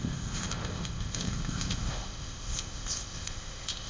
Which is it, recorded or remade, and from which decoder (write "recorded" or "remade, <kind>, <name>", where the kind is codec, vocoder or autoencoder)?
remade, codec, ZipCodec